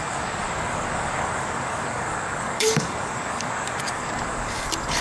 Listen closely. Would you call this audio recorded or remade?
remade